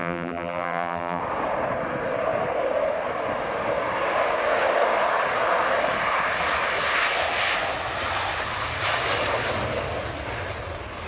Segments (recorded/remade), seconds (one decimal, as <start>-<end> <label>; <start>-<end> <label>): 0.0-1.2 remade; 1.2-11.1 recorded